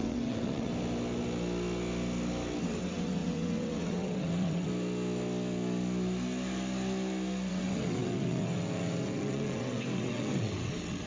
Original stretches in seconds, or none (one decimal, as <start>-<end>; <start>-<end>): 0.7-2.6; 4.7-7.5